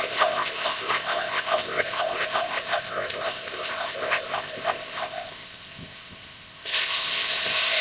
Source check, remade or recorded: remade